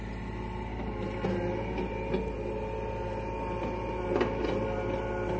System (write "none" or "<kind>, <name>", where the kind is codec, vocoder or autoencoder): none